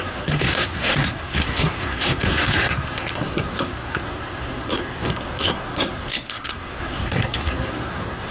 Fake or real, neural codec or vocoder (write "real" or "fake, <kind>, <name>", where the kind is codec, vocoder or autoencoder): fake, codec, SNAC